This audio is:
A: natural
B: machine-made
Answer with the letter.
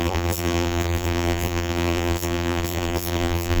B